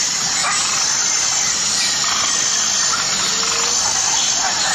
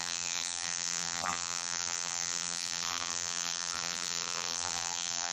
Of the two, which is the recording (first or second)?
first